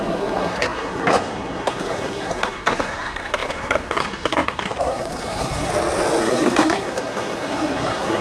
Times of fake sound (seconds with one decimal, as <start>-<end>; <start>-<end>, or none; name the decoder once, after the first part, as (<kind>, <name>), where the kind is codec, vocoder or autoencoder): 0.0-5.7 (codec, SNAC); 6.2-8.2